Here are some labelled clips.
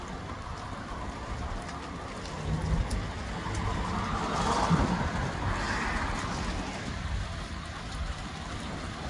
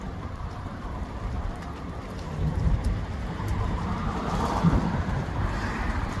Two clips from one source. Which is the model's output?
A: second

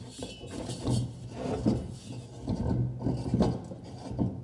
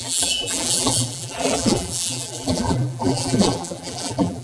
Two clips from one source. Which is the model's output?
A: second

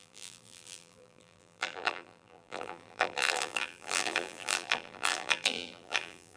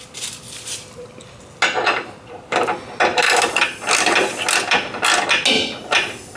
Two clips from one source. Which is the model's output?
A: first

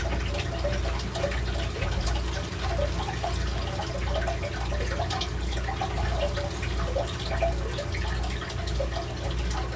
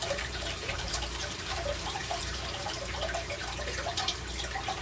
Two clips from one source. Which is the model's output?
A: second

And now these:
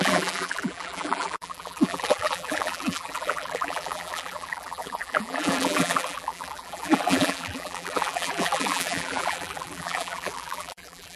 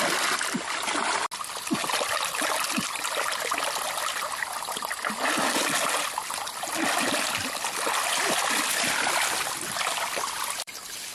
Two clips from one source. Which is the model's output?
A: first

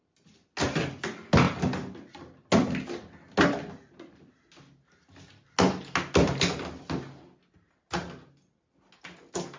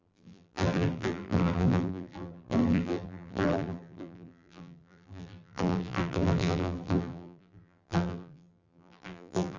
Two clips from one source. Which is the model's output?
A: second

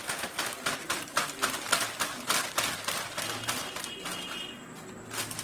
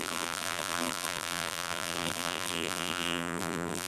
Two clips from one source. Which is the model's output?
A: second